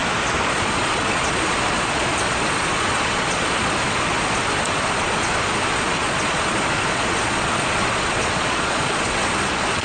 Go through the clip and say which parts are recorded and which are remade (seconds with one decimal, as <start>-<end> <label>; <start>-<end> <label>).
0.0-0.5 recorded; 0.5-9.8 remade